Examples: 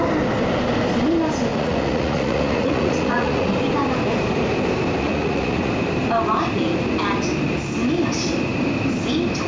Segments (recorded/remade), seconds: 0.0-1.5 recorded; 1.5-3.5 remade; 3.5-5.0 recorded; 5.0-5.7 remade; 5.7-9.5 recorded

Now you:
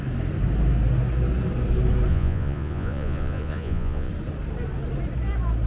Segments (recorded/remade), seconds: 0.0-2.1 recorded; 2.1-4.1 remade; 4.1-5.7 recorded

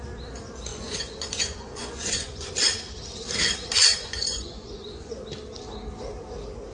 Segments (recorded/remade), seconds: 0.0-0.7 recorded; 0.7-2.5 remade; 2.5-3.9 recorded; 3.9-5.1 remade; 5.1-6.7 recorded

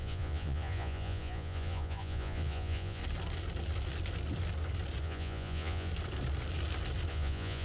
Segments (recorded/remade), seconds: 0.0-3.0 remade; 3.0-5.0 recorded; 5.0-5.9 remade; 5.9-7.1 recorded; 7.1-7.6 remade

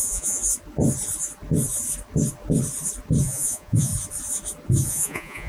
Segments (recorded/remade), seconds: 0.0-0.4 remade; 0.4-3.2 recorded; 3.2-3.9 remade; 3.9-4.9 recorded; 4.9-5.5 remade